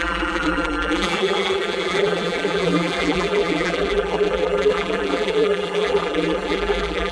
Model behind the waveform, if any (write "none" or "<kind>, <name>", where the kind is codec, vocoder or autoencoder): vocoder, BigVGAN v2